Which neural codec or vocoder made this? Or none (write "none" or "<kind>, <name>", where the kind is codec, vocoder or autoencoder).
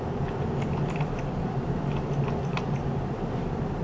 none